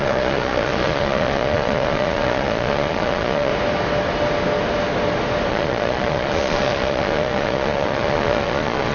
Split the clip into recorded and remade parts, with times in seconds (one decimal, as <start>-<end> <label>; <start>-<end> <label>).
0.0-3.5 remade; 3.5-5.5 recorded; 5.5-8.9 remade